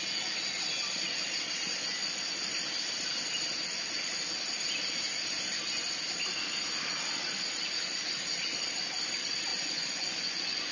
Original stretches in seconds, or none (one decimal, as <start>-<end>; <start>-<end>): 0.0-9.5